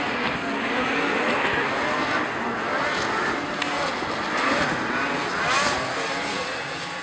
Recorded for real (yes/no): yes